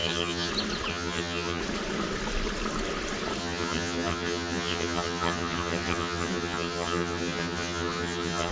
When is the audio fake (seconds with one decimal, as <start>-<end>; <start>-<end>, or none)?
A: 0.0-0.5; 0.9-1.6; 3.4-8.5